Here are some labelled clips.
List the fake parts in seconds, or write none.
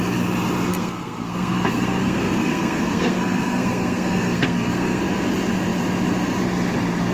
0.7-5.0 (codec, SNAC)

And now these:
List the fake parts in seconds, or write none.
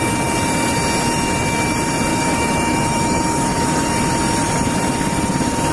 2.1-3.9 (autoencoder, DAC-VAE)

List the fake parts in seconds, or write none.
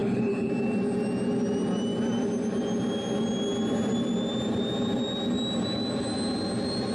0.0-0.5 (codec, HILCodec)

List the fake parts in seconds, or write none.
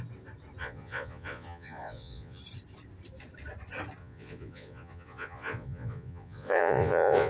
0.6-2.4 (vocoder, Vocos); 4.0-7.3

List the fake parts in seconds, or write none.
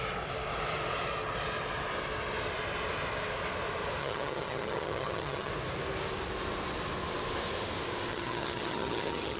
4.0-5.5 (vocoder, HiFi-GAN); 8.1-9.4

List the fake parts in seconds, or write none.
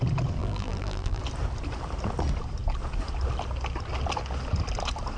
0.4-1.2 (vocoder, BigVGAN v2)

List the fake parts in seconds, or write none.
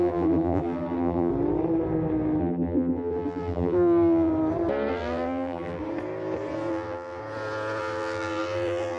0.0-1.3 (vocoder, BigVGAN v2); 2.4-4.3; 4.9-5.8; 6.7-7.2; 7.8-9.0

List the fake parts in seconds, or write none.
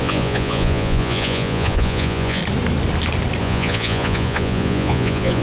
0.0-2.4 (vocoder, Vocos); 3.4-5.4